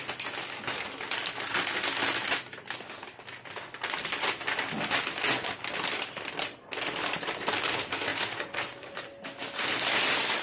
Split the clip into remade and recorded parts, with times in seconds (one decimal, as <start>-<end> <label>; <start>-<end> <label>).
0.0-10.4 recorded